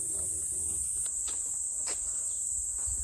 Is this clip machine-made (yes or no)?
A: no